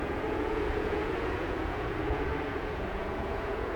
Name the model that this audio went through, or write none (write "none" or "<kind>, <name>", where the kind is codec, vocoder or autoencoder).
vocoder, Vocos